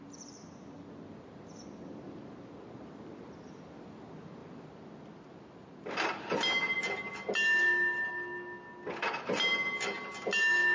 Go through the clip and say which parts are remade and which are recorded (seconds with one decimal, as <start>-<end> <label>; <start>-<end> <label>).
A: 0.0-10.7 recorded